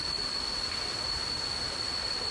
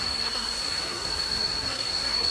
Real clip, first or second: first